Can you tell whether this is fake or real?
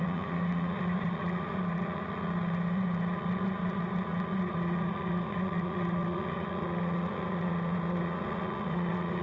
fake